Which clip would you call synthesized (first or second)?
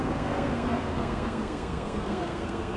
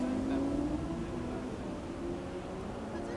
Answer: first